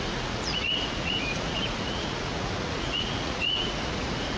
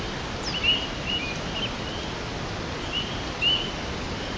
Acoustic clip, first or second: second